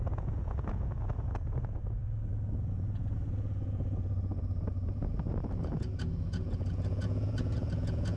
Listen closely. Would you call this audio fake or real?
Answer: fake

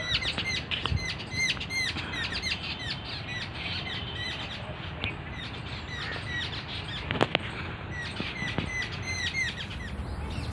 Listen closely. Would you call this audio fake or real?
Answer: real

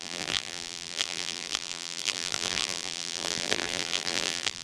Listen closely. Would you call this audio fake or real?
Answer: fake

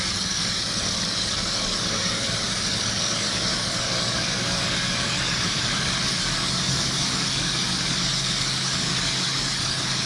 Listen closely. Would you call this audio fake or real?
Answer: fake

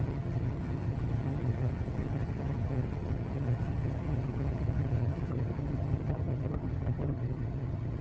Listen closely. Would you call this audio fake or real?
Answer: fake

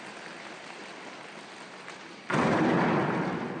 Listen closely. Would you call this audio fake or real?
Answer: real